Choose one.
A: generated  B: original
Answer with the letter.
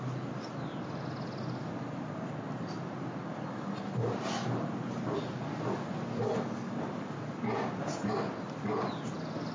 B